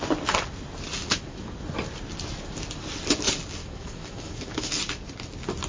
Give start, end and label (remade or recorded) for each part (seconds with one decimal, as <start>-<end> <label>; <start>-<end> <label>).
0.0-1.0 recorded; 1.0-1.5 remade; 1.5-3.6 recorded; 3.6-4.7 remade; 4.7-5.7 recorded